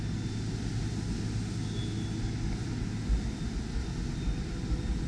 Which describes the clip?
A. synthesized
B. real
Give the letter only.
B